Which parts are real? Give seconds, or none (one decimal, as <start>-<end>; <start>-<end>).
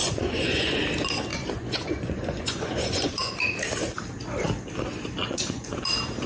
0.8-1.3; 3.3-5.2; 5.8-6.3